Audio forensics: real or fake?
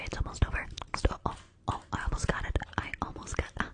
real